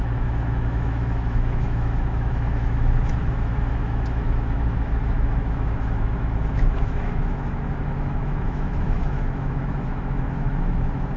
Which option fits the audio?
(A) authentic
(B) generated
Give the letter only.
B